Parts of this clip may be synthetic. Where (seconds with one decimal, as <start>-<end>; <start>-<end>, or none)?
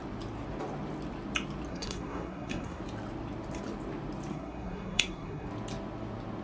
1.7-2.8; 4.3-5.5